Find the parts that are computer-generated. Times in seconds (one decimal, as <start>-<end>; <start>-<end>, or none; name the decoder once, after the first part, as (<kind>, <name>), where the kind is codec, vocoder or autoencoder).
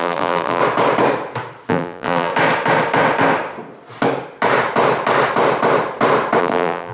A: 0.0-0.6 (vocoder, BigVGAN v2); 1.7-2.3; 6.4-6.9